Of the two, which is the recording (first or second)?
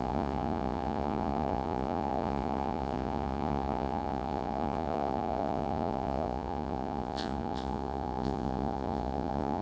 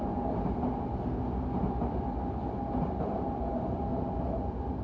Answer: second